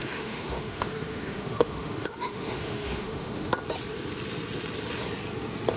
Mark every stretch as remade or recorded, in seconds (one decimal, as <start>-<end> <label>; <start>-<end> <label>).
0.0-3.5 remade; 3.5-5.8 recorded